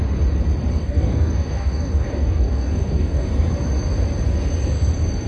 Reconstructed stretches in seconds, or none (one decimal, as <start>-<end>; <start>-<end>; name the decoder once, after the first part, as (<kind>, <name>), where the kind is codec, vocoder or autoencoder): 0.7-3.3 (codec, DAC)